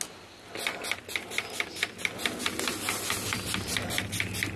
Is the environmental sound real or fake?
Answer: real